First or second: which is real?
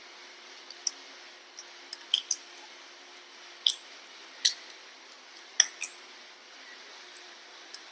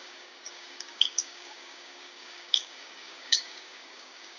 first